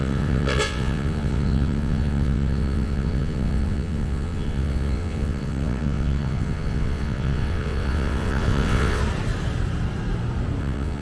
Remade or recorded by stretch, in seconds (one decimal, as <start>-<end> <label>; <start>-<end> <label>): 0.0-9.0 remade; 9.0-10.6 recorded; 10.6-11.0 remade

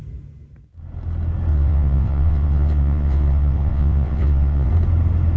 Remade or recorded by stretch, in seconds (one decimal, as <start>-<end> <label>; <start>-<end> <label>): 0.0-1.5 recorded; 1.5-4.7 remade; 4.7-5.4 recorded

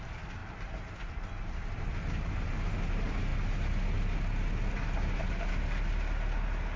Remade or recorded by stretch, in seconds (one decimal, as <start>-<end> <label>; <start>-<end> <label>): 0.0-6.8 recorded

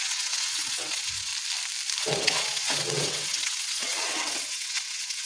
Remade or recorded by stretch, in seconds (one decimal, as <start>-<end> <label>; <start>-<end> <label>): 0.0-1.3 remade; 1.3-2.0 recorded; 2.0-5.3 remade

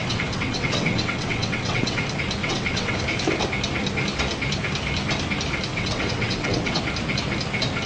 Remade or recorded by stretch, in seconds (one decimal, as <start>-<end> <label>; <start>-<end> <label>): 0.0-2.0 remade; 2.0-2.4 recorded; 2.4-3.0 remade; 3.0-5.7 recorded; 5.7-6.8 remade; 6.8-7.9 recorded

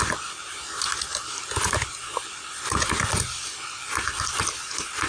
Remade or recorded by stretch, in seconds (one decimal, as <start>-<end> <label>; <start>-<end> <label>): 0.0-5.1 recorded